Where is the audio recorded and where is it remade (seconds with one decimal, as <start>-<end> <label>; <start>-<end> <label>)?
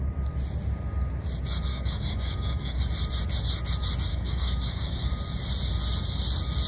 0.0-1.7 recorded; 1.7-2.9 remade; 2.9-4.1 recorded; 4.1-5.1 remade; 5.1-6.7 recorded